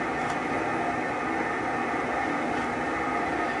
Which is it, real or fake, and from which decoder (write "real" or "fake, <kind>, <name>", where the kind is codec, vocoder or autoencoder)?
real